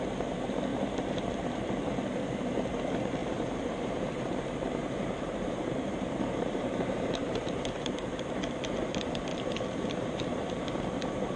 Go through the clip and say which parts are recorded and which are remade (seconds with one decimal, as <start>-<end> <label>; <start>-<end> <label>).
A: 0.0-0.7 recorded; 0.7-1.7 remade; 1.7-3.2 recorded; 3.2-8.2 remade; 8.2-9.3 recorded; 9.3-10.4 remade; 10.4-11.4 recorded